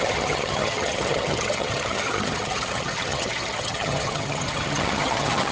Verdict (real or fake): fake